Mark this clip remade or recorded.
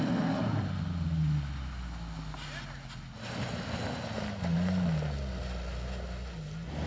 recorded